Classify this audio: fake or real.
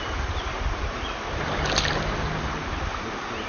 real